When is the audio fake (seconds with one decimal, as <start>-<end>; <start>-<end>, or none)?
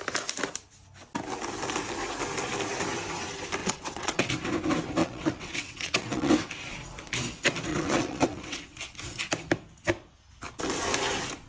3.6-4.3; 5.0-6.3; 7.7-8.6